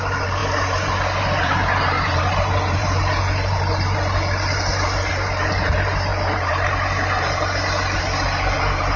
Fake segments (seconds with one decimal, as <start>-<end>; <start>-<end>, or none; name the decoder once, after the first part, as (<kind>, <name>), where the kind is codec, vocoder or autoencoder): 0.0-9.0 (vocoder, BigVGAN v2)